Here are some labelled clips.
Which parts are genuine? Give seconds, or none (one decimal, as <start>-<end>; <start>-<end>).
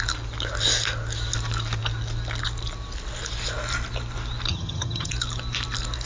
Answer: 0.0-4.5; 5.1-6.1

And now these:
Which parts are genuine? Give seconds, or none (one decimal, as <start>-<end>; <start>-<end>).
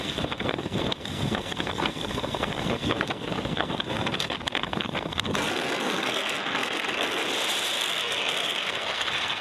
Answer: 7.2-7.8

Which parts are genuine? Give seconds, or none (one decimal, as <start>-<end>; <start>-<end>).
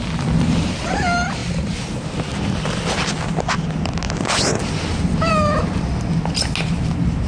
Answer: 0.0-7.3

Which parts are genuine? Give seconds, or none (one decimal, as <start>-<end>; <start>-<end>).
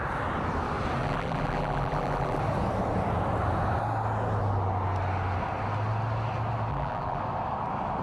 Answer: 0.0-1.0; 2.4-6.7; 7.2-8.0